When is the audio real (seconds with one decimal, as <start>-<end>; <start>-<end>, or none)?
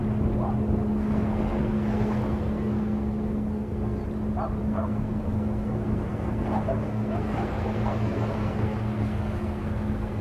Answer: 0.0-0.9; 4.0-4.6